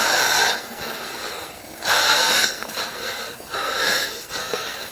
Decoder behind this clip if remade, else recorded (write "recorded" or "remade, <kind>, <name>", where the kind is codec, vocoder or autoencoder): remade, codec, SNAC